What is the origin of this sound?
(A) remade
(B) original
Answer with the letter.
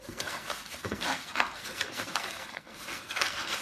A